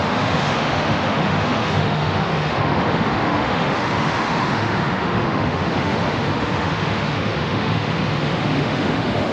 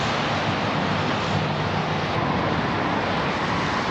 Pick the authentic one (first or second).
second